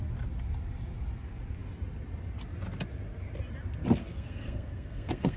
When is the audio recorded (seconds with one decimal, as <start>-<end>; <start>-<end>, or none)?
0.0-4.0